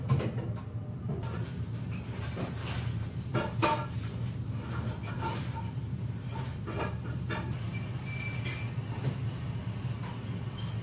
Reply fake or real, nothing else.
real